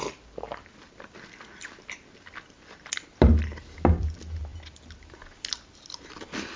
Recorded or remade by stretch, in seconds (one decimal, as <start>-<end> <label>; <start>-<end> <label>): 0.0-6.6 recorded